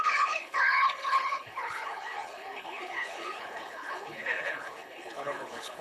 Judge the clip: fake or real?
fake